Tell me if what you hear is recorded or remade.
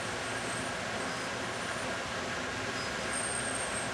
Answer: recorded